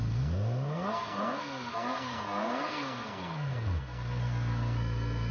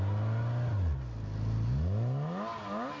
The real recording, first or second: second